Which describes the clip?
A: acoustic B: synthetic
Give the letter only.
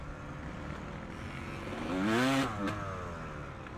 A